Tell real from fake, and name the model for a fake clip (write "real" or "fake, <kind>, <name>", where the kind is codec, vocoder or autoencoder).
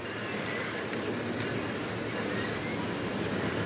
real